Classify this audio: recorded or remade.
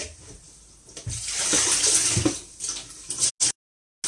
recorded